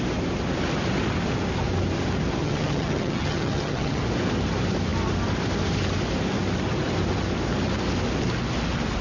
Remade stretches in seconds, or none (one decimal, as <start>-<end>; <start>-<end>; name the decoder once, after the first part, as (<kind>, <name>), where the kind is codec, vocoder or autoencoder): 2.4-4.0 (vocoder, HiFi-GAN)